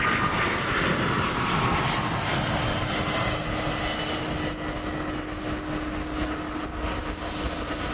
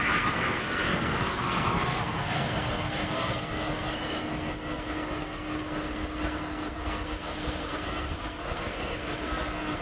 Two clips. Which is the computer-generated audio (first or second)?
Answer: second